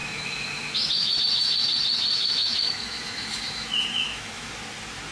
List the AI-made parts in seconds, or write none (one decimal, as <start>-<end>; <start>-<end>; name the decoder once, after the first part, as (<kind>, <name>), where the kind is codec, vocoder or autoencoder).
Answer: 0.0-1.2 (autoencoder, DAC-VAE); 2.1-4.5